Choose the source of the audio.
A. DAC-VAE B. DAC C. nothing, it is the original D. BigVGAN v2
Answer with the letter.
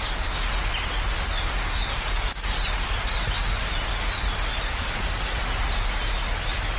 C